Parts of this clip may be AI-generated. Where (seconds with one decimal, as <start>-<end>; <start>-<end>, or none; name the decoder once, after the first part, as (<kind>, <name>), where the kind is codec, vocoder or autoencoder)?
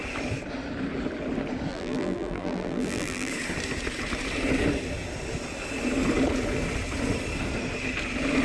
1.7-3.3 (vocoder, BigVGAN v2)